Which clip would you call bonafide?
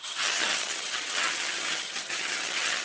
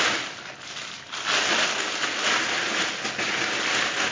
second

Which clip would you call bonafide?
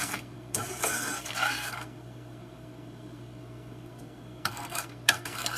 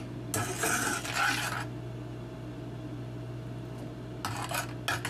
second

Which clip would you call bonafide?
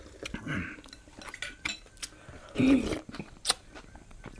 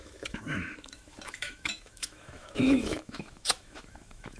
first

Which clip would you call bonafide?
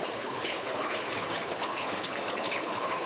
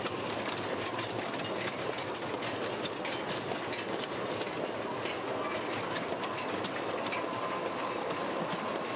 second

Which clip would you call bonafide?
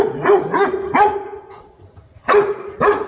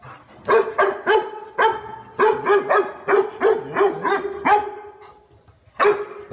second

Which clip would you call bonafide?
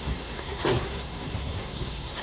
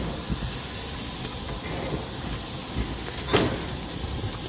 second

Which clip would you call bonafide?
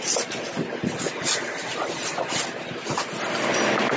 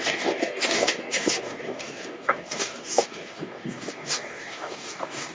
first